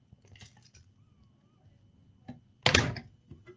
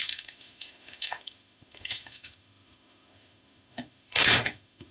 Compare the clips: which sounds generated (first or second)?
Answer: second